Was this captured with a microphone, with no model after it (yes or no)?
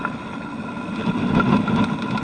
yes